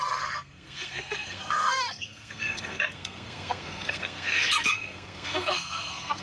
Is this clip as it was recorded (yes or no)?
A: no